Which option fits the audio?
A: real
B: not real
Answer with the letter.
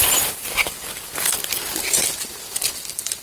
B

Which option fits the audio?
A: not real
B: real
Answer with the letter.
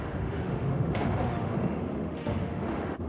A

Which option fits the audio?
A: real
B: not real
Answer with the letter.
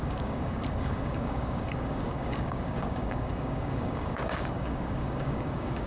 B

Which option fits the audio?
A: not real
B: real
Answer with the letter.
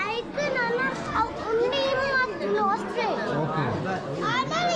B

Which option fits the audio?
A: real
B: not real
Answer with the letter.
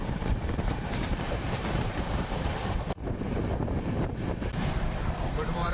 B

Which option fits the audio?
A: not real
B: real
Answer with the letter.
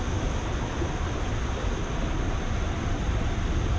B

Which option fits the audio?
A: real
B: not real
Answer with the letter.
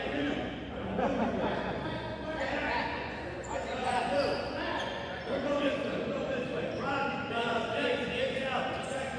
B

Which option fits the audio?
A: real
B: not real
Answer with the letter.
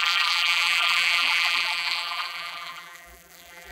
B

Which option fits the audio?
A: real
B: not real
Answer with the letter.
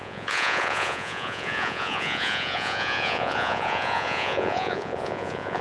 B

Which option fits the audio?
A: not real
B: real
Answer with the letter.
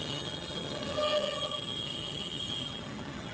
A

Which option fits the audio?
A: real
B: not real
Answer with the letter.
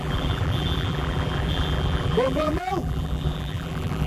B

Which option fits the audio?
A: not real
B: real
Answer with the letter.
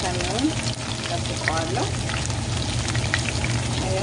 B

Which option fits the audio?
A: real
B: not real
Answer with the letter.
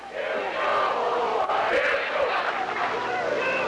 A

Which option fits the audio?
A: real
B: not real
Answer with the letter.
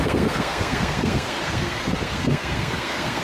B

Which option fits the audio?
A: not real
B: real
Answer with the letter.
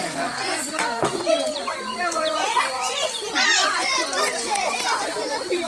A